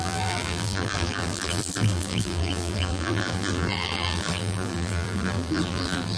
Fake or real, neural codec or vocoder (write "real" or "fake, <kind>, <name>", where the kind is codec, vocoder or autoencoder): fake, vocoder, BigVGAN v2